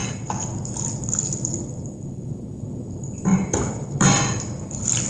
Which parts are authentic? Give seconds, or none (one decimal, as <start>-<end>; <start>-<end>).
none